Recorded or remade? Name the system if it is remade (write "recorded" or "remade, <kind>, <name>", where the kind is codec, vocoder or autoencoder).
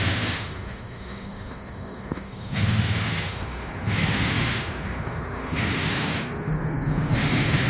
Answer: remade, autoencoder, DAC-VAE